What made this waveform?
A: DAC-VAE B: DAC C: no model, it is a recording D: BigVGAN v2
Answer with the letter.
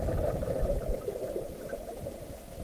D